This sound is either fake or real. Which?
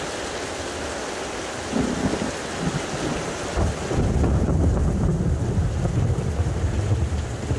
real